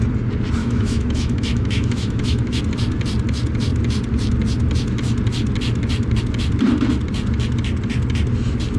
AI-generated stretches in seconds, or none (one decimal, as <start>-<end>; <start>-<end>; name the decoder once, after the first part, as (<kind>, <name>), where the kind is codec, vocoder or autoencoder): 0.6-2.6 (autoencoder, DAC-VAE)